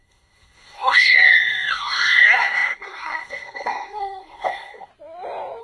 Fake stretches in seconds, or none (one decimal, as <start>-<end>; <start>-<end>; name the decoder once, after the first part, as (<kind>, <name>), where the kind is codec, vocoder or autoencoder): 0.0-4.9 (codec, SNAC)